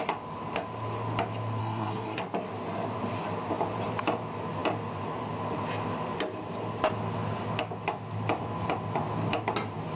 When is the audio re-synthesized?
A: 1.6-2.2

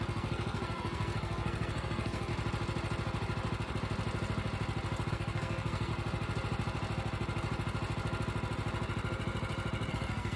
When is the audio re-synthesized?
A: 0.0-2.3; 5.1-5.9; 9.9-10.4

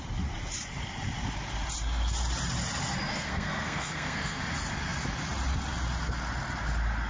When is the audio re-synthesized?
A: 3.1-4.4

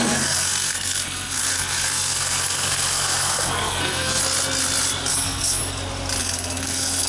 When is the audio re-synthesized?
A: 0.0-4.2; 5.1-5.6; 6.2-7.1

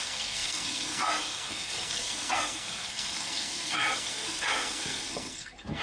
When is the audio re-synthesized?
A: 0.0-5.8

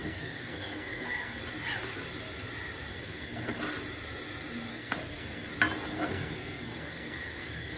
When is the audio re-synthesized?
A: 0.0-1.4; 2.9-3.6; 4.7-5.5; 5.9-7.8